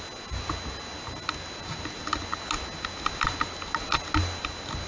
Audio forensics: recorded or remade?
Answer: recorded